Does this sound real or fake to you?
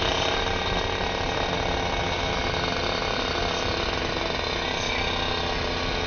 real